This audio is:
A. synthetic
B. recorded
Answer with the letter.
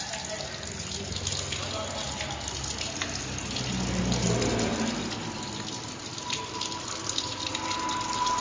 B